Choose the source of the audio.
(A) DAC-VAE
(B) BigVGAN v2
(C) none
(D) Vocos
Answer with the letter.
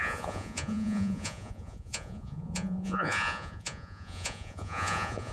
D